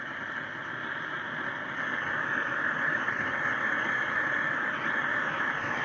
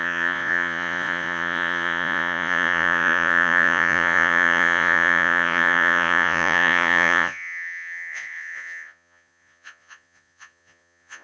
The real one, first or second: first